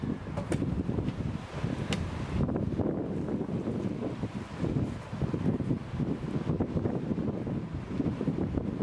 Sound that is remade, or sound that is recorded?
recorded